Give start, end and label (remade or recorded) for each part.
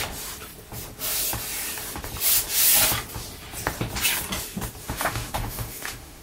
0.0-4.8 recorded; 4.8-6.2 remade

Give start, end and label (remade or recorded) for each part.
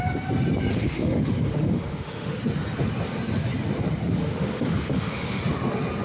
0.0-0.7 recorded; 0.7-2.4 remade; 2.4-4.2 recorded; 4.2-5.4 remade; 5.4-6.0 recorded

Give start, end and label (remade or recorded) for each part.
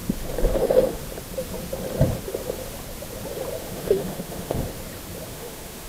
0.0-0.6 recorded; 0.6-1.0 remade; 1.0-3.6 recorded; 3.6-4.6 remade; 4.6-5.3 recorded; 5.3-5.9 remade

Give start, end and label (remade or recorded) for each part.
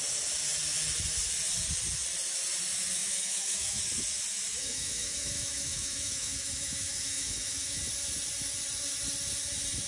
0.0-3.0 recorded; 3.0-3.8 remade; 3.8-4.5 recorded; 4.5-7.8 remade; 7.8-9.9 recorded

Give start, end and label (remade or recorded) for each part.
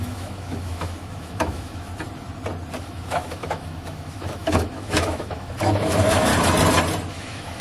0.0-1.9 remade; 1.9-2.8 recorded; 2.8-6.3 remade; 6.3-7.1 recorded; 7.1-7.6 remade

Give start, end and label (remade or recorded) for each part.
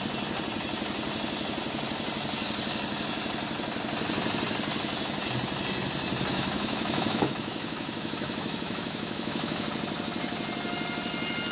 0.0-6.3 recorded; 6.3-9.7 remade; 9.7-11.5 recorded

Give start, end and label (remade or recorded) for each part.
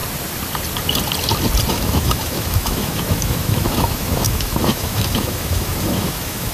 0.0-1.7 recorded; 1.7-6.5 remade